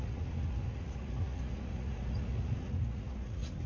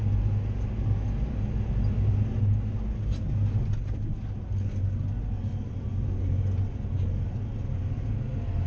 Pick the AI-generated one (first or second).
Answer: first